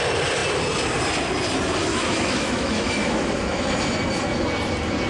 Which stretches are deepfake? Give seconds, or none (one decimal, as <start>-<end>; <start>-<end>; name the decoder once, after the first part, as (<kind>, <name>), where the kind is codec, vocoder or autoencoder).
1.9-3.7 (autoencoder, DAC-VAE)